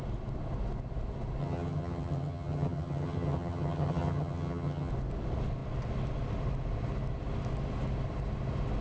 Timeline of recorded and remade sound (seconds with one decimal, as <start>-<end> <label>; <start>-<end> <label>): 0.0-1.4 recorded; 1.4-4.9 remade; 4.9-8.8 recorded